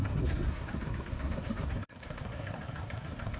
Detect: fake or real fake